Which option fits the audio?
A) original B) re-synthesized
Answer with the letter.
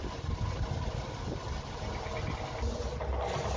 A